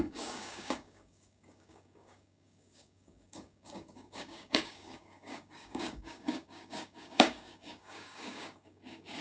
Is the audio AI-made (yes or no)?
yes